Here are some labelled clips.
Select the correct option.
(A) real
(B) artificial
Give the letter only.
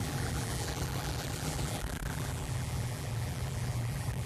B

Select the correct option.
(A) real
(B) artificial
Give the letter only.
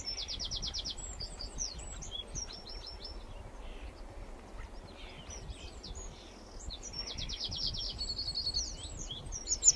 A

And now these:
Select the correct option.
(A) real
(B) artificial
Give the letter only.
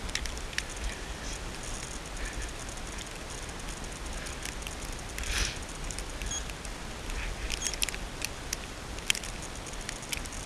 A